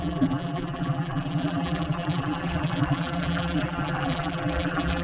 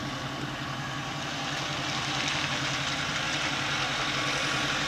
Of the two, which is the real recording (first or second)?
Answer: second